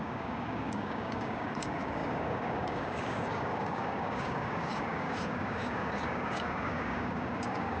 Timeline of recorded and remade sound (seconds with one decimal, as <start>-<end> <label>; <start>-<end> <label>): 0.0-7.8 remade